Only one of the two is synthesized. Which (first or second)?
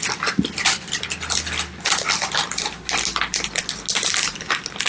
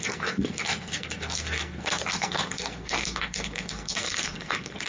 second